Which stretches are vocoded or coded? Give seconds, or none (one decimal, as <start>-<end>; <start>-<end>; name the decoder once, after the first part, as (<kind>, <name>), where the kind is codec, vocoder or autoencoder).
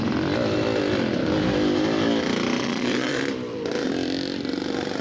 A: 2.6-3.2 (vocoder, Vocos)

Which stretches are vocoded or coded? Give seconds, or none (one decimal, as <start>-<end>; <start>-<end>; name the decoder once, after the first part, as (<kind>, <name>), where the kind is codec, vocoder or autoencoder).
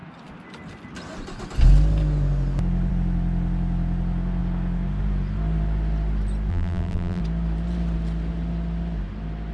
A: 6.5-7.2 (vocoder, BigVGAN v2)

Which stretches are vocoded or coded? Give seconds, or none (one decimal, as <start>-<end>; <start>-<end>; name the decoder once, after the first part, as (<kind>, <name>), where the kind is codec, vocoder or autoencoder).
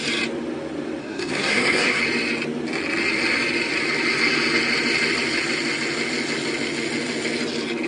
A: 1.0-2.0 (codec, SNAC)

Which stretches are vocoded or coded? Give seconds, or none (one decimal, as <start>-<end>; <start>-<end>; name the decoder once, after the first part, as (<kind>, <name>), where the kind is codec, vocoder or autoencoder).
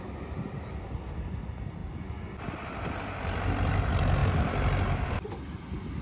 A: none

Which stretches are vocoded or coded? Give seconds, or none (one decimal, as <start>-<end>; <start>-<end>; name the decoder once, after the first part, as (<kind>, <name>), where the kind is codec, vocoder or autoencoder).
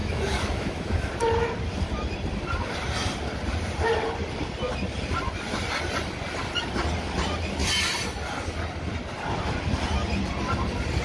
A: 0.0-1.1 (autoencoder, DAC-VAE)